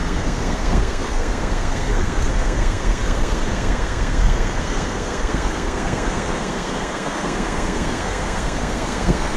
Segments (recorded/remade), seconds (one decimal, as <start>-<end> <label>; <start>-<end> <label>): 0.0-9.4 remade